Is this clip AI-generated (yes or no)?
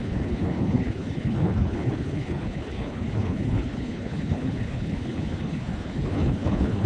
yes